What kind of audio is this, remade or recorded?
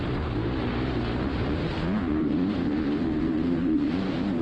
remade